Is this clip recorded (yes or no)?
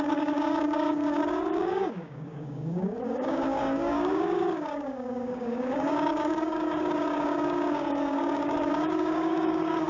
no